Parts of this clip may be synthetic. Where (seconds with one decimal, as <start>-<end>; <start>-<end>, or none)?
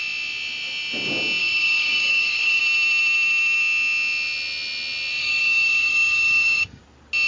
1.4-2.6; 5.2-6.8